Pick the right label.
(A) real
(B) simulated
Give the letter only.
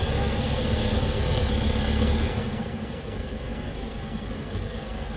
B